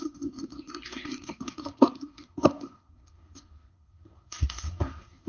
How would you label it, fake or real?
fake